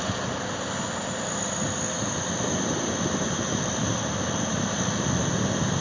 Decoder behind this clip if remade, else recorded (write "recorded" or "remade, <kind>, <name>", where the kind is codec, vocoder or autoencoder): recorded